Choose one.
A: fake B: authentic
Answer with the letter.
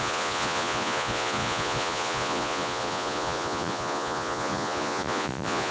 A